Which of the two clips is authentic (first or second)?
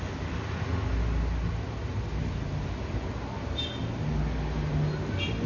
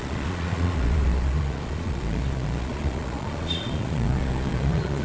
first